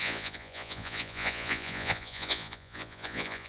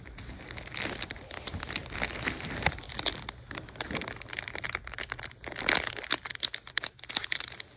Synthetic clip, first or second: first